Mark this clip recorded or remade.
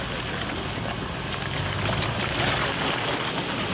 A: recorded